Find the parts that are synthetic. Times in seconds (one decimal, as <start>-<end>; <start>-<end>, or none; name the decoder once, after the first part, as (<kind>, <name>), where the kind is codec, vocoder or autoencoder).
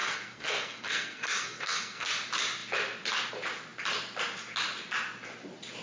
0.0-2.1 (codec, SNAC)